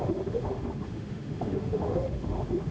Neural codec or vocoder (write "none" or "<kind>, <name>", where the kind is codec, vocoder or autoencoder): autoencoder, DAC-VAE